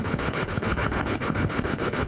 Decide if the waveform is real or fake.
fake